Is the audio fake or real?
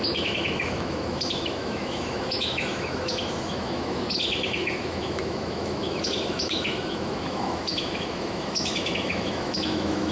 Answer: fake